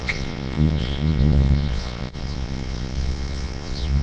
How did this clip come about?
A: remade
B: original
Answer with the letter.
A